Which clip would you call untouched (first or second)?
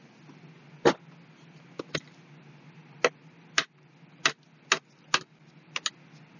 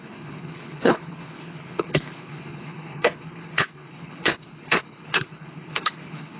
first